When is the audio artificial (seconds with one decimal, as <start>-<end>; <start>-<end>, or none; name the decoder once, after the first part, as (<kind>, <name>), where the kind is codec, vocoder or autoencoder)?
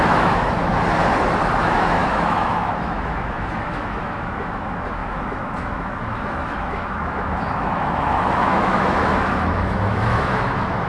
0.0-0.7 (autoencoder, DAC-VAE); 1.6-10.9